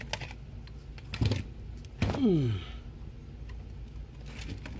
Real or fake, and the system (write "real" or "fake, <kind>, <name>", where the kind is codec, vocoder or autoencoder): real